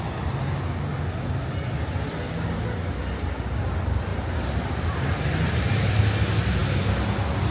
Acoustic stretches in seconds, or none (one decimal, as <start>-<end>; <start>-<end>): 0.0-4.1; 6.0-7.5